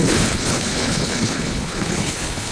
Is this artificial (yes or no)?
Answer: yes